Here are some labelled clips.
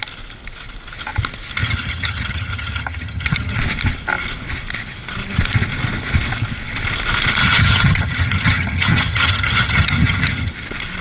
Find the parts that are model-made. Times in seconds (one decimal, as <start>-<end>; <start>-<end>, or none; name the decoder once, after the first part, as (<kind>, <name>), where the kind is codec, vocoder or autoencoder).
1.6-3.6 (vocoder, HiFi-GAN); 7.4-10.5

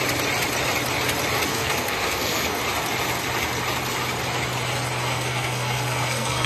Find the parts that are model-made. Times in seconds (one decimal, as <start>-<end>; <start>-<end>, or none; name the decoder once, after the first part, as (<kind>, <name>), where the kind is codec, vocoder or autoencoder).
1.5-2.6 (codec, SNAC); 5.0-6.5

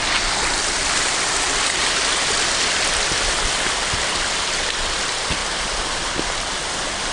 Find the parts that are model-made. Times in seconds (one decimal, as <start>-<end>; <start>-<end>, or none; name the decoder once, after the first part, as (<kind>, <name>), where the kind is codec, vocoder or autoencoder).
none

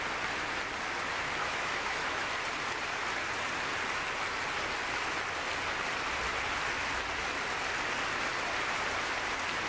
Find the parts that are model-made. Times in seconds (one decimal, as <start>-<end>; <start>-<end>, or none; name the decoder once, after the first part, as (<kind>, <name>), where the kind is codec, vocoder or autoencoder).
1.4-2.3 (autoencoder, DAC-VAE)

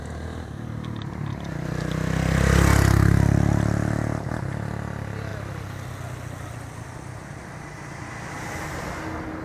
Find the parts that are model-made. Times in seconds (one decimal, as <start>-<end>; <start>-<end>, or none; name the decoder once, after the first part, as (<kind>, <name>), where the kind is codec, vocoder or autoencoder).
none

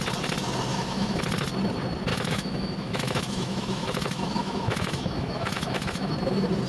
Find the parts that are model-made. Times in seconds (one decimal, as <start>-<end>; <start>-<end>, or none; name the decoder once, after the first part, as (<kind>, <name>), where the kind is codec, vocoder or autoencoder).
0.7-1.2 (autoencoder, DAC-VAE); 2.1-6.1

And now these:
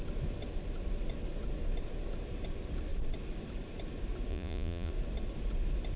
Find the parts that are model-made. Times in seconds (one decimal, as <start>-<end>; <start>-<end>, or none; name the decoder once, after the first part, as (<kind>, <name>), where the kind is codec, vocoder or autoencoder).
4.3-4.9 (vocoder, Vocos)

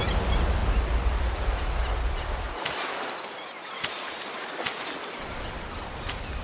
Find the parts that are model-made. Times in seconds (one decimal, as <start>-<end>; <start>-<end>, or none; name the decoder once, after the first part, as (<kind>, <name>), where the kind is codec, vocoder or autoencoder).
none